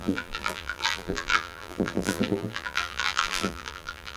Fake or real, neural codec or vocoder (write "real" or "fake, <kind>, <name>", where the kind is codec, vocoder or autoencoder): fake, vocoder, BigVGAN v2